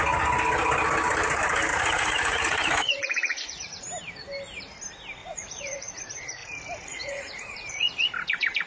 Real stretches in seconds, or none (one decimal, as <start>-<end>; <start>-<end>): 0.0-1.7; 3.8-5.2; 6.0-6.4; 8.1-8.7